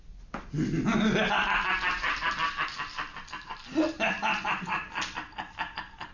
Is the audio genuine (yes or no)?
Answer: yes